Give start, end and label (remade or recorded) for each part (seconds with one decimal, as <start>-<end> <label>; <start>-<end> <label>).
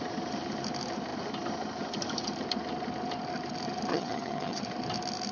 0.0-3.9 recorded; 3.9-4.6 remade; 4.6-5.3 recorded